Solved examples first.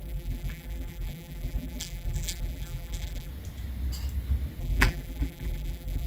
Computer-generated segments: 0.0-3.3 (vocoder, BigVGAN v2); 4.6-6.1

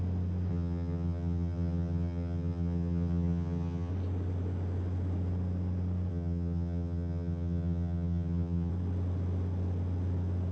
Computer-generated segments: 0.5-3.9 (vocoder, HiFi-GAN); 6.1-8.7

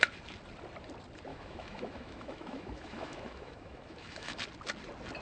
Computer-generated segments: 1.3-4.4 (autoencoder, DAC-VAE)